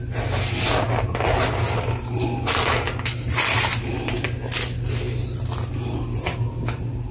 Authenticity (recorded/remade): recorded